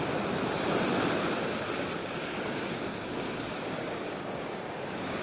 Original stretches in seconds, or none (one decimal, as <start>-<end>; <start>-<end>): 0.0-2.0